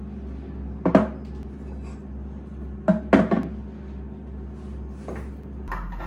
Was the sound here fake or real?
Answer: real